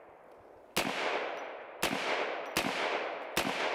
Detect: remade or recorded recorded